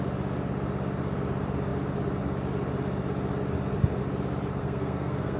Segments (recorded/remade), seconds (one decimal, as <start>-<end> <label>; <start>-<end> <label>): 0.0-4.6 recorded; 4.6-5.4 remade